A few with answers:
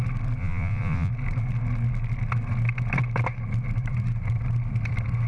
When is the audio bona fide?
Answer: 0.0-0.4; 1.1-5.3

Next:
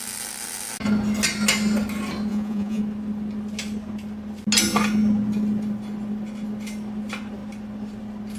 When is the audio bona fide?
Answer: 0.0-2.3; 2.8-8.4

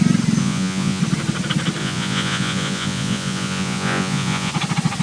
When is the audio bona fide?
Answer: 0.0-0.4; 1.0-1.8; 4.5-5.0

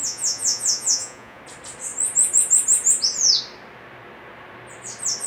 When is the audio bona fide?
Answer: 1.4-5.3

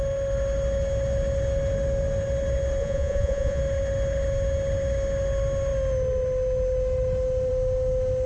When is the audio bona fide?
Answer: 0.0-2.8; 3.6-8.3